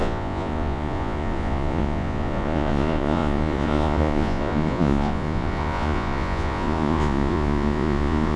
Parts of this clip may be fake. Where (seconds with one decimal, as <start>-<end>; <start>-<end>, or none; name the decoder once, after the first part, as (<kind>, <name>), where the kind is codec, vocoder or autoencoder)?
0.0-8.4 (vocoder, Vocos)